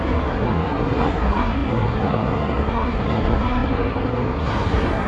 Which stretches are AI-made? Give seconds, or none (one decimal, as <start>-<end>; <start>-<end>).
0.0-5.1